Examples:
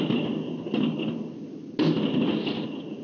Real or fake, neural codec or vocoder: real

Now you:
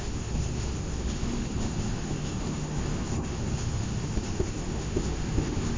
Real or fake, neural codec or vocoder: fake, autoencoder, DAC-VAE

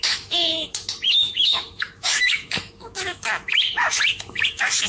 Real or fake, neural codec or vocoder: fake, autoencoder, DAC-VAE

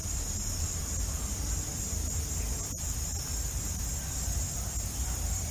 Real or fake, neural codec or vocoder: real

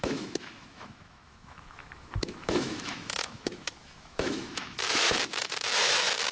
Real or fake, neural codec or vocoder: fake, autoencoder, DAC-VAE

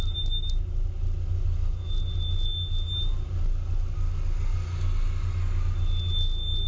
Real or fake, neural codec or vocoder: real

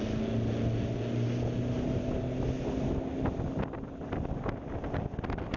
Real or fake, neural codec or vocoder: real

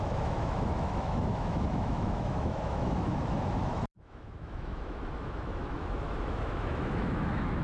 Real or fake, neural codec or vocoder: fake, autoencoder, DAC-VAE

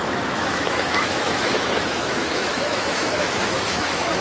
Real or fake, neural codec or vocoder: fake, autoencoder, DAC-VAE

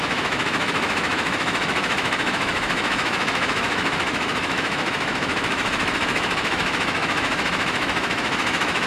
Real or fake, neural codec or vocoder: fake, autoencoder, DAC-VAE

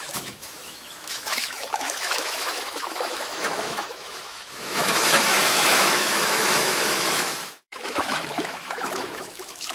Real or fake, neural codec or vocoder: fake, autoencoder, DAC-VAE